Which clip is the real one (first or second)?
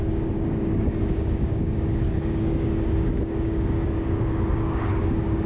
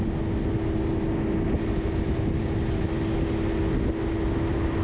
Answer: second